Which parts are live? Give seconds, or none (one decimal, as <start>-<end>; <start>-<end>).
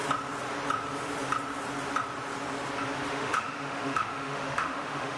0.0-3.1